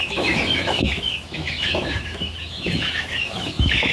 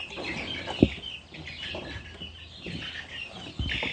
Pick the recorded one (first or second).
second